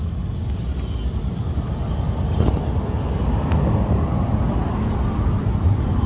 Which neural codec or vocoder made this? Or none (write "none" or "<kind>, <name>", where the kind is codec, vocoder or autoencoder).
none